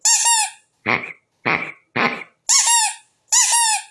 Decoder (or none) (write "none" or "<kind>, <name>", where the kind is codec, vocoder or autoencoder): none